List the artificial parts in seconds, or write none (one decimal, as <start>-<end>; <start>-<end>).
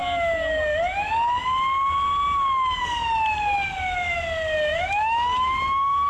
4.7-6.1